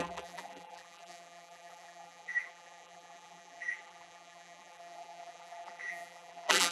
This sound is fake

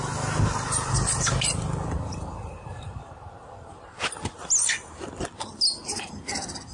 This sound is real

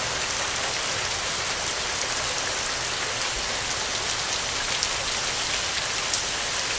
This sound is real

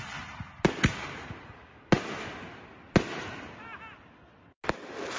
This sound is real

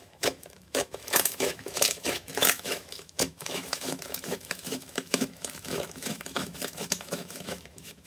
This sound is fake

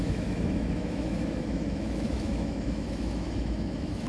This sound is fake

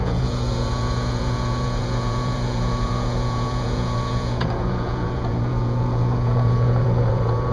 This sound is fake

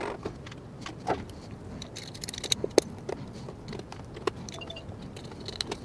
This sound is real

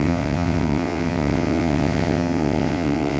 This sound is fake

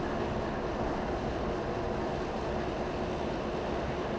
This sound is real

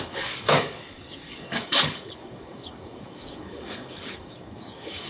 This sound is fake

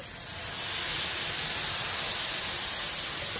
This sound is real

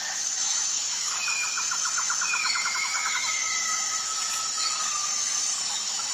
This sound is fake